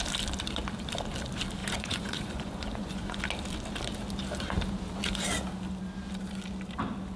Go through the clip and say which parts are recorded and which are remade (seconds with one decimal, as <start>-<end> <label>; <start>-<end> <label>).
0.0-1.6 recorded; 1.6-3.2 remade; 3.2-7.2 recorded